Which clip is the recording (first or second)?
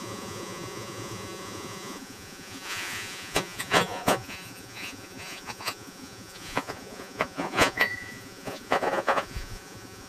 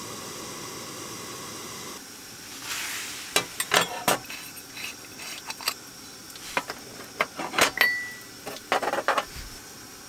second